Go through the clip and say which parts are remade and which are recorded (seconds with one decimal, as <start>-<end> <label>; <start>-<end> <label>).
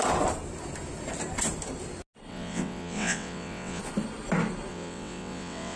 0.0-2.3 recorded; 2.3-3.8 remade; 3.8-4.7 recorded; 4.7-5.8 remade